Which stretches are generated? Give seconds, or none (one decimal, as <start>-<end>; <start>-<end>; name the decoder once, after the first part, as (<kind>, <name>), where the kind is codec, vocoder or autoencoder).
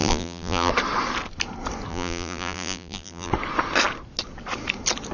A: 0.0-0.7 (vocoder, BigVGAN v2); 1.9-3.3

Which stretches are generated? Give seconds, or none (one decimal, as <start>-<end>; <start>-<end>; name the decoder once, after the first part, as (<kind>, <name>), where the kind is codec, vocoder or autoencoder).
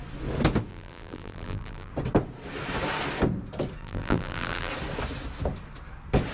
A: 0.7-1.9 (vocoder, BigVGAN v2); 3.8-4.7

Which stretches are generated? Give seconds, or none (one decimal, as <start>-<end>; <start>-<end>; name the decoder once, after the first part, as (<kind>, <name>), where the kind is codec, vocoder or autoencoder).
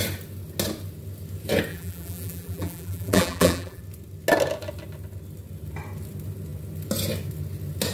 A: 1.7-3.8 (vocoder, BigVGAN v2)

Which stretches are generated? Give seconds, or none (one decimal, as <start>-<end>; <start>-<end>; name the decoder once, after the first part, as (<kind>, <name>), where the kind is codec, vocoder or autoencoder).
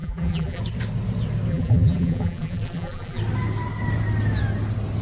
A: 0.0-0.6 (vocoder, BigVGAN v2); 1.5-3.2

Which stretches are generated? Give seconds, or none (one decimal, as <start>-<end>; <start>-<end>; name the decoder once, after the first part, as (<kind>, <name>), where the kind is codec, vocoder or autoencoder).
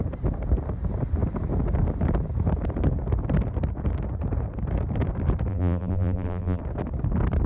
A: 5.5-6.6 (vocoder, BigVGAN v2)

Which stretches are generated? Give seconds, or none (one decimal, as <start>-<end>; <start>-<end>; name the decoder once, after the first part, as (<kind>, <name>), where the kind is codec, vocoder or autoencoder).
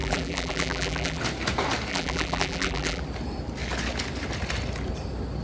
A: 0.0-1.2 (vocoder, BigVGAN v2); 1.9-3.0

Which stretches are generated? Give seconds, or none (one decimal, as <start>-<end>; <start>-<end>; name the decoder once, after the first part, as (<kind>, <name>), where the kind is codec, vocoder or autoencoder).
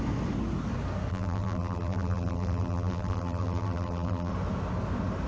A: 1.1-4.3 (vocoder, BigVGAN v2)